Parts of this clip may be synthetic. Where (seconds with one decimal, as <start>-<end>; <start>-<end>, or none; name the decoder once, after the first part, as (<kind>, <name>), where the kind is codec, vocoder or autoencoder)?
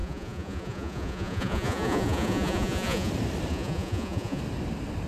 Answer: 0.0-3.1 (vocoder, Vocos); 3.5-4.4